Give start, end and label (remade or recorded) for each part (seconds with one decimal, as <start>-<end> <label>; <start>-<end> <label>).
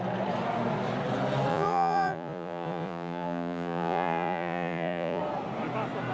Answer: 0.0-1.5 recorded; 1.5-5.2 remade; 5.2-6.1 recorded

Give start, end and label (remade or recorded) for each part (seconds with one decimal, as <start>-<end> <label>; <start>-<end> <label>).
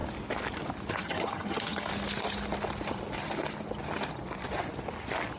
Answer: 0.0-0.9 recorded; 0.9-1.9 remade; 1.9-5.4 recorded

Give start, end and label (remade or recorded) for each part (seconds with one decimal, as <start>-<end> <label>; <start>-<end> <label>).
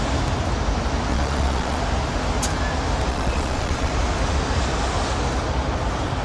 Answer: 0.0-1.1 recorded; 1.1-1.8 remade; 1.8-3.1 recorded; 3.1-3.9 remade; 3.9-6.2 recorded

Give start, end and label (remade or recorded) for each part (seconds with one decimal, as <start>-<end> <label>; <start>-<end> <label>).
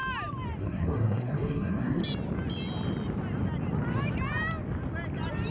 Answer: 0.0-0.6 recorded; 0.6-2.0 remade; 2.0-5.5 recorded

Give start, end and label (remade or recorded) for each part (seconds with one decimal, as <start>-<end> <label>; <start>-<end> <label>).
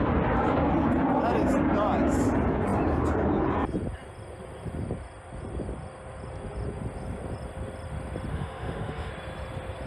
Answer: 0.0-8.3 recorded; 8.3-9.1 remade; 9.1-9.9 recorded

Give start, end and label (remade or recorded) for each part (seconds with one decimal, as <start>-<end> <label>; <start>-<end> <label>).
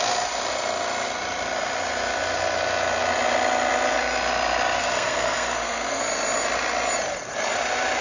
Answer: 0.0-4.8 recorded; 4.8-6.0 remade; 6.0-8.0 recorded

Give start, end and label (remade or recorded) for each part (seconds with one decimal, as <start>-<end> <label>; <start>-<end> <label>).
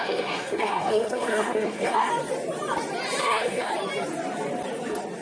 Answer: 0.0-2.1 remade; 2.1-3.2 recorded; 3.2-3.7 remade; 3.7-5.2 recorded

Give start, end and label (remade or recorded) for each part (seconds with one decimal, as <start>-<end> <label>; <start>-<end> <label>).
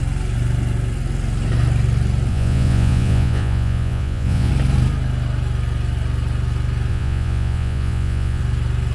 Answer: 0.0-2.3 recorded; 2.3-4.5 remade; 4.5-6.9 recorded; 6.9-8.4 remade; 8.4-8.9 recorded